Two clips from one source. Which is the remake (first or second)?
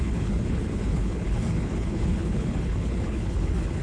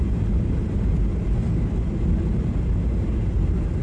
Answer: first